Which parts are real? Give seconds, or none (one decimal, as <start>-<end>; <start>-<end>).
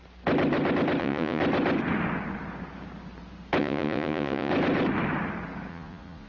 0.0-1.0; 1.4-3.6; 4.5-5.7